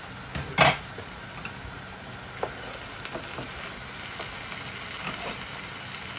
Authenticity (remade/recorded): recorded